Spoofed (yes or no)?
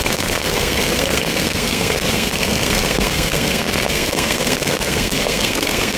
yes